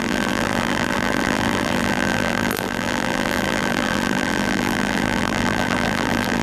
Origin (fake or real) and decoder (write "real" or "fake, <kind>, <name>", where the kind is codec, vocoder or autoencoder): fake, vocoder, BigVGAN v2